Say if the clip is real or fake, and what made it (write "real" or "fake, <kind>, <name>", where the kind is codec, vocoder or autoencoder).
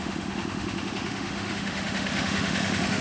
fake, autoencoder, DAC-VAE